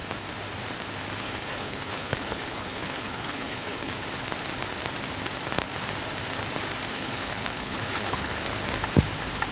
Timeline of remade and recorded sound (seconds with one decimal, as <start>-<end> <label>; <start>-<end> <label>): 0.0-1.2 recorded; 1.2-3.9 remade; 3.9-6.9 recorded; 6.9-8.3 remade; 8.3-9.5 recorded